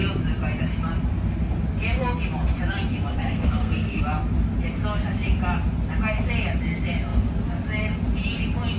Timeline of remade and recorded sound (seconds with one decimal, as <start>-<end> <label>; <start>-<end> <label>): 0.0-3.1 recorded; 3.1-4.0 remade; 4.0-8.8 recorded